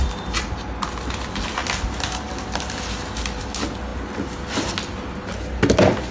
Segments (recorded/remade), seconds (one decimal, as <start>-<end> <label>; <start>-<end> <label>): 0.0-6.1 recorded